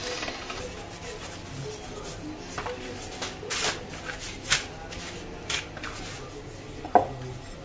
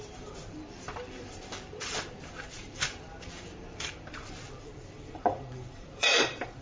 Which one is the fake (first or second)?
second